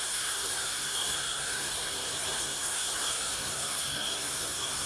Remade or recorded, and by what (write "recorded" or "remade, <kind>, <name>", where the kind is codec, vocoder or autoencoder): remade, codec, SNAC